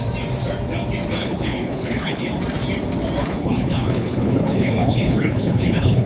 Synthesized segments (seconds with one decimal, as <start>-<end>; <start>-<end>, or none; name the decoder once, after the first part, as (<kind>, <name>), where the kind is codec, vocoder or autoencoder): 1.2-2.2 (codec, HILCodec); 3.2-6.1